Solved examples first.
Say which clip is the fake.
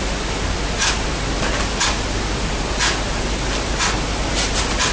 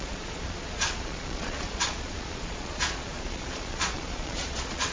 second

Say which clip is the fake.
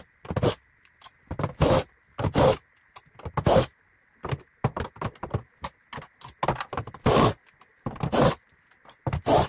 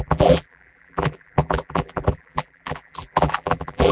second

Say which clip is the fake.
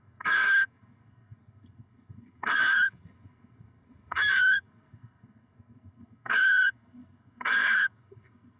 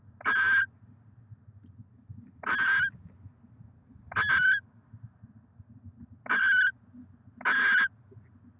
first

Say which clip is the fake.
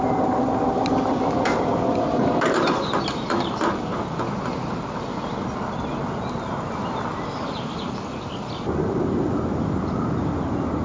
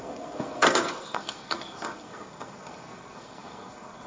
second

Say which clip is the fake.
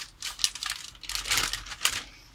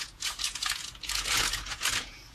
second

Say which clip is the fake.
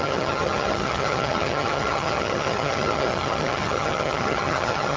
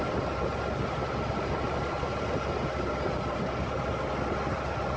first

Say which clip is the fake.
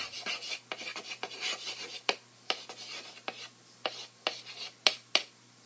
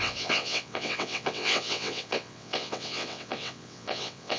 second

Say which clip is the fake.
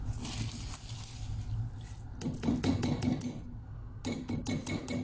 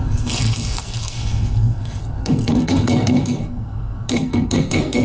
second